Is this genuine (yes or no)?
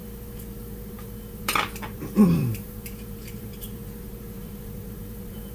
no